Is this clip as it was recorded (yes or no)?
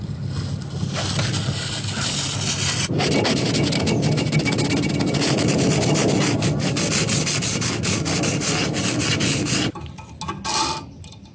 yes